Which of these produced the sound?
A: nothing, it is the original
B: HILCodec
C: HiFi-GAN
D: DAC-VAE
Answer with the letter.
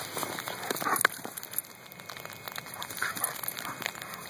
A